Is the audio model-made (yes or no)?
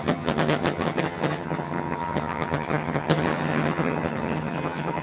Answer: yes